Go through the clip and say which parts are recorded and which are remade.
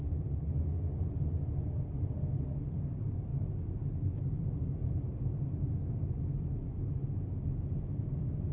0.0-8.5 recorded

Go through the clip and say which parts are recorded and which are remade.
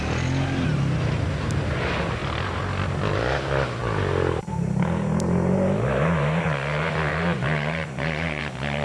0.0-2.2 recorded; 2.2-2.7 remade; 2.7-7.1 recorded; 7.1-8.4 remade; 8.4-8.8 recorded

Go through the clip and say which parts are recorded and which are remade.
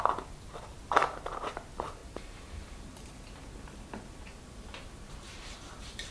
0.0-2.0 recorded; 2.0-3.1 remade; 3.1-6.1 recorded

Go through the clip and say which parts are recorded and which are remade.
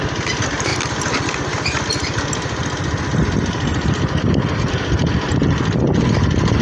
0.0-0.7 recorded; 0.7-4.7 remade; 4.7-6.6 recorded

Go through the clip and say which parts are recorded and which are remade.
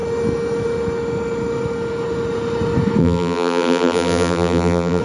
0.0-3.0 recorded; 3.0-5.0 remade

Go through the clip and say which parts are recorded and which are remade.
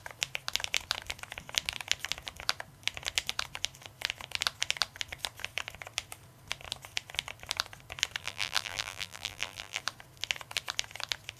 0.0-8.2 recorded; 8.2-9.8 remade; 9.8-11.4 recorded